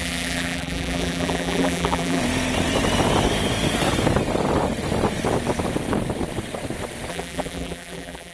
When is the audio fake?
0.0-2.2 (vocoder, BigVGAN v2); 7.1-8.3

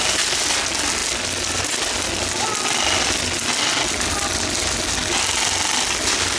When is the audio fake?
1.0-1.7 (vocoder, BigVGAN v2)

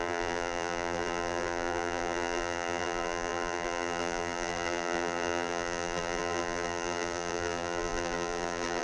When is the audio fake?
0.0-8.8 (vocoder, BigVGAN v2)

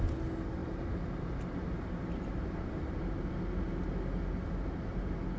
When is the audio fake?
0.6-3.4 (vocoder, BigVGAN v2)

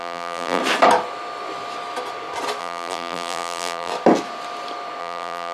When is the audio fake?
0.0-0.6 (vocoder, BigVGAN v2); 2.6-3.9; 5.0-5.5

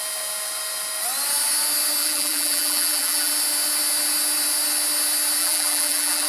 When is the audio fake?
2.0-3.3 (vocoder, BigVGAN v2); 5.4-6.3